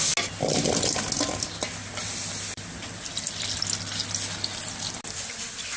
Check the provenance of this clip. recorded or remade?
recorded